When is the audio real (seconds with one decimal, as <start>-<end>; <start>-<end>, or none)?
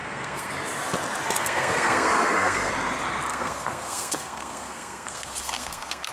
0.5-1.4; 2.7-3.3